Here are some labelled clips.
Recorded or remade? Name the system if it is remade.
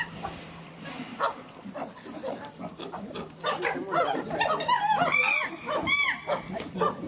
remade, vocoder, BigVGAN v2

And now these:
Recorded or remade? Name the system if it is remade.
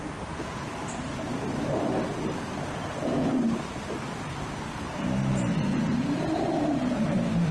remade, vocoder, BigVGAN v2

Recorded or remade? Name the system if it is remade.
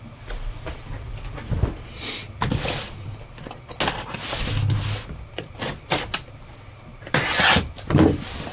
recorded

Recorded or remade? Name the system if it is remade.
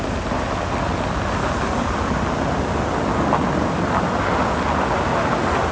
recorded